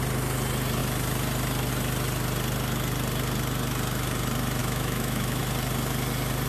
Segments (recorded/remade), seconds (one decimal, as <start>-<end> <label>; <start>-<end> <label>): 0.0-4.6 recorded; 4.6-5.4 remade; 5.4-6.5 recorded